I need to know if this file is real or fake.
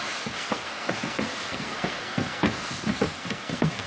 fake